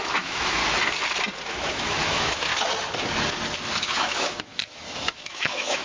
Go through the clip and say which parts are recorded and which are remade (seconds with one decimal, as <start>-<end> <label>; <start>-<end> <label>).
0.0-0.6 remade; 0.6-1.5 recorded; 1.5-2.5 remade; 2.5-3.8 recorded; 3.8-5.8 remade